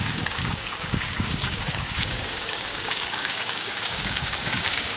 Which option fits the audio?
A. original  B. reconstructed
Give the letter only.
B